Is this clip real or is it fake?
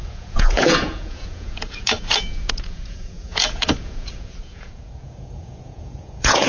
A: fake